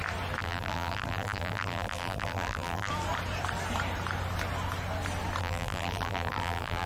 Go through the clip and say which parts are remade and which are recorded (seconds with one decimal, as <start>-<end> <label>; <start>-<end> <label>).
0.0-0.4 recorded; 0.4-2.9 remade; 2.9-5.4 recorded; 5.4-6.9 remade